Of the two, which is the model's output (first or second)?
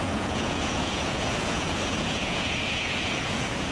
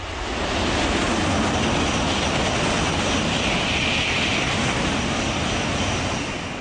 first